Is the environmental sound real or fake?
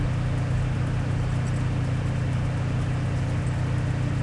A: real